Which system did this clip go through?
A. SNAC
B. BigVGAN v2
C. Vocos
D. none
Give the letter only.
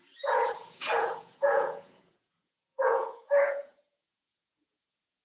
C